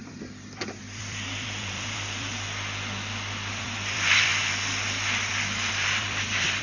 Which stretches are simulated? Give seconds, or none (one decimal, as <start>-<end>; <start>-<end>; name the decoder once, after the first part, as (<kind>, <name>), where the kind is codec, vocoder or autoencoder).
0.0-2.3 (vocoder, BigVGAN v2); 3.5-6.6